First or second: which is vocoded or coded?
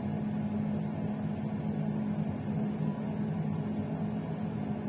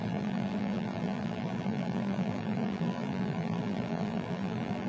second